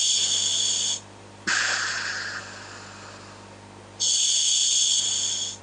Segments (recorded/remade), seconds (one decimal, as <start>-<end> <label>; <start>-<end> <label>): 0.0-0.5 recorded; 0.5-2.4 remade; 2.4-4.6 recorded; 4.6-5.6 remade